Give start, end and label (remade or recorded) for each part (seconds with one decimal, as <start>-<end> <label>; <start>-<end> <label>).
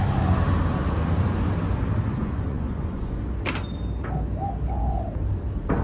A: 0.0-2.2 recorded; 2.2-3.2 remade; 3.2-5.8 recorded